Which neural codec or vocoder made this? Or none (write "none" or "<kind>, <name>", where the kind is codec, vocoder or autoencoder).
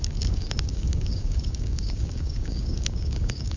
codec, DAC